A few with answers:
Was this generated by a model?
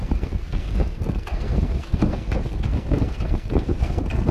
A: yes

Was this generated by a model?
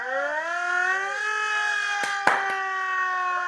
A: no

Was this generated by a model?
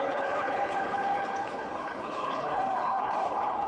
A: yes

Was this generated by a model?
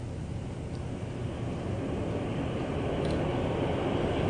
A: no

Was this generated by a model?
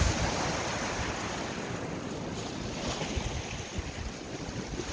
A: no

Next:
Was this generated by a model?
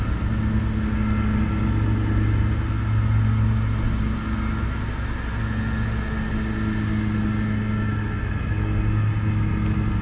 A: no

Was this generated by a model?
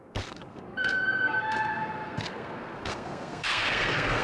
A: yes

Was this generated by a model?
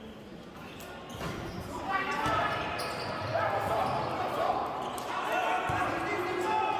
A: no